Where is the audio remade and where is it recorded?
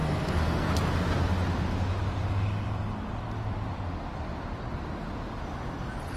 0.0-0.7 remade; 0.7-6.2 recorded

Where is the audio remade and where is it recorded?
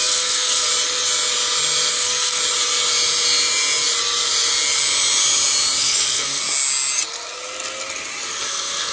0.0-0.7 remade; 0.7-1.9 recorded; 1.9-2.4 remade; 2.4-5.8 recorded; 5.8-6.4 remade; 6.4-8.4 recorded; 8.4-8.9 remade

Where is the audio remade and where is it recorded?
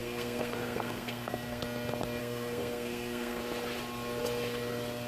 0.0-1.6 remade; 1.6-2.2 recorded; 2.2-3.4 remade; 3.4-5.1 recorded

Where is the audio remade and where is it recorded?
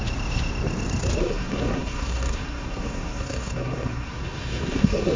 0.0-1.2 recorded; 1.2-5.2 remade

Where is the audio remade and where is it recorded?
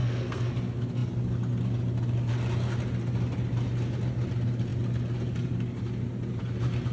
0.0-0.5 remade; 0.5-6.9 recorded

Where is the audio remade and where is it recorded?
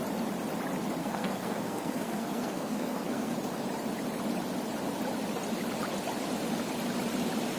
0.0-1.0 recorded; 1.0-3.3 remade; 3.3-7.6 recorded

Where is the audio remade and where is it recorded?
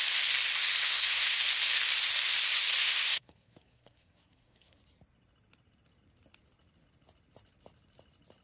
0.0-0.8 recorded; 0.8-1.4 remade; 1.4-2.8 recorded; 2.8-4.8 remade; 4.8-8.4 recorded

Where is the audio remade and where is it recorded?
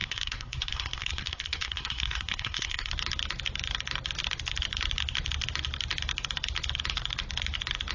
0.0-2.9 remade; 2.9-7.9 recorded